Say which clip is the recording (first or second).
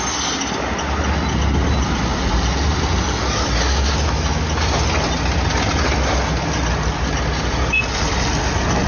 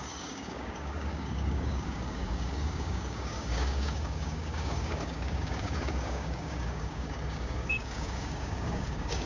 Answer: first